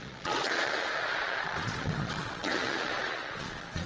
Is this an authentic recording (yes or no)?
no